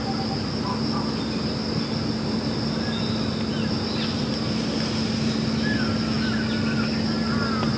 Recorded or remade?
recorded